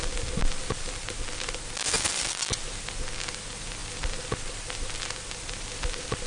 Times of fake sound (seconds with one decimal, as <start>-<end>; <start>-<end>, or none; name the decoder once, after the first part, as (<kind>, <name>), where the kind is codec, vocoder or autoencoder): none